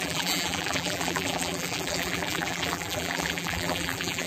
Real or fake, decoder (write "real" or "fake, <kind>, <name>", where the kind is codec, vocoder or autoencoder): fake, vocoder, BigVGAN v2